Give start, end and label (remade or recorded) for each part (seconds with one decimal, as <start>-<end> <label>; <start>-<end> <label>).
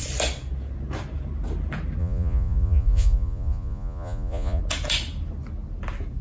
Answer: 0.0-2.0 recorded; 2.0-4.6 remade; 4.6-6.2 recorded